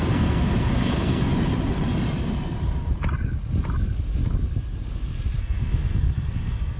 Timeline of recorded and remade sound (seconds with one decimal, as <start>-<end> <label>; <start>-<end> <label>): 0.0-1.3 remade; 1.3-5.4 recorded; 5.4-6.8 remade

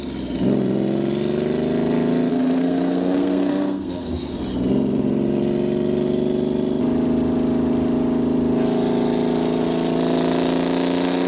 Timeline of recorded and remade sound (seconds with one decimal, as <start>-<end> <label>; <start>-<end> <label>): 0.0-2.3 recorded; 2.3-4.3 remade; 4.3-11.3 recorded